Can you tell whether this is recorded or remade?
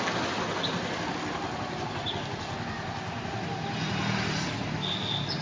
recorded